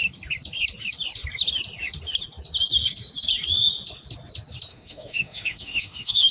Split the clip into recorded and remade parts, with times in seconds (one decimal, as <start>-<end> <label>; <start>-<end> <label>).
0.0-4.7 recorded; 4.7-6.3 remade

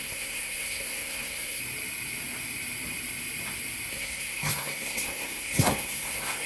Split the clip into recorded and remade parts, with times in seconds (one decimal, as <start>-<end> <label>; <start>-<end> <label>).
0.0-1.6 remade; 1.6-3.9 recorded; 3.9-6.5 remade

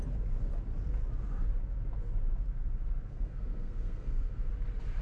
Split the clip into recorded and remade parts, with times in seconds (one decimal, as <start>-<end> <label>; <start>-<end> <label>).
0.0-3.1 recorded; 3.1-4.5 remade; 4.5-5.0 recorded

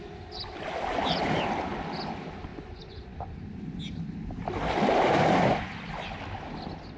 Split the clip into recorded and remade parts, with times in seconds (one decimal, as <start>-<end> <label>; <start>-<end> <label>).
0.0-2.5 recorded; 2.5-3.3 remade; 3.3-7.0 recorded